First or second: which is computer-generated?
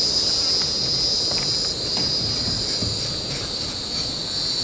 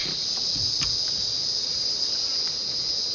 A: second